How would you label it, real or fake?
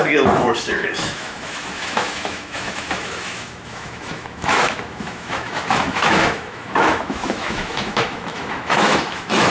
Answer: fake